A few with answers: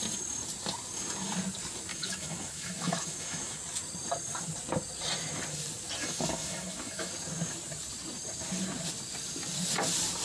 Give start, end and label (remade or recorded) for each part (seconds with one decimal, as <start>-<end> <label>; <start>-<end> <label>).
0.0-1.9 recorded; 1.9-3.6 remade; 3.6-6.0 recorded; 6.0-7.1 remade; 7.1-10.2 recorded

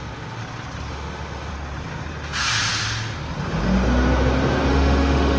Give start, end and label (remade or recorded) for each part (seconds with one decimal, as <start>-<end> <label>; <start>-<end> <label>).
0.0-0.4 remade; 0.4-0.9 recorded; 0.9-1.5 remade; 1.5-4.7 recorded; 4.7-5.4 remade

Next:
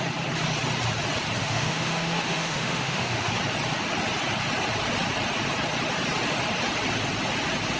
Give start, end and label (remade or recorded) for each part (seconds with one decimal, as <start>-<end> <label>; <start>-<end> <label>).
0.0-1.4 recorded; 1.4-3.3 remade; 3.3-7.8 recorded

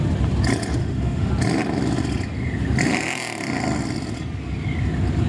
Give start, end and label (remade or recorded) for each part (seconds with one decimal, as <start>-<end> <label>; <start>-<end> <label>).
0.0-0.8 recorded; 0.8-1.3 remade; 1.3-5.3 recorded

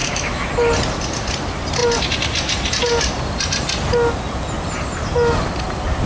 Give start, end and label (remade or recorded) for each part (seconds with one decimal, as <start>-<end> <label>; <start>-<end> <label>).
0.0-0.5 remade; 0.5-6.1 recorded

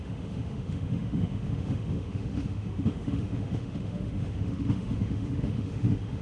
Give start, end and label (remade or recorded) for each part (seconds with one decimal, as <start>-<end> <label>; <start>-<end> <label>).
0.0-6.2 remade